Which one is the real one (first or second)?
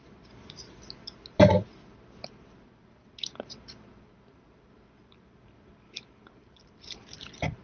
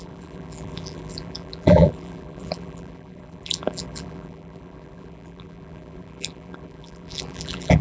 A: first